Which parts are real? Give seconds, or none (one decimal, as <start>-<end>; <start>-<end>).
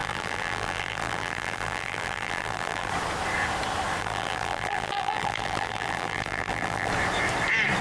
2.9-4.0; 6.9-7.8